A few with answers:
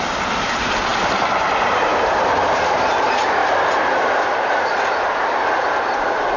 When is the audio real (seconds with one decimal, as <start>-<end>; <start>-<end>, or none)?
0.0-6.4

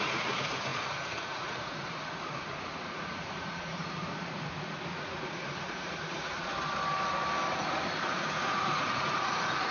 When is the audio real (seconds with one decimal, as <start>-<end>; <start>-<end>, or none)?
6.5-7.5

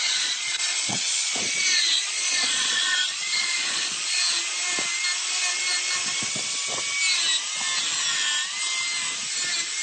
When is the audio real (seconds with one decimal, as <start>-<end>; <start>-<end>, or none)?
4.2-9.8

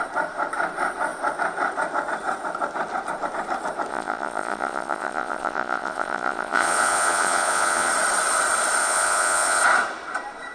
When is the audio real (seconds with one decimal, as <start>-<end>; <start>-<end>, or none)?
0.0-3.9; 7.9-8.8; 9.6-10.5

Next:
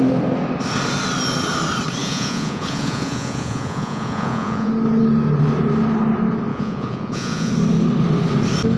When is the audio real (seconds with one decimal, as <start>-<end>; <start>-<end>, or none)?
0.0-2.0; 4.7-6.5; 7.5-8.8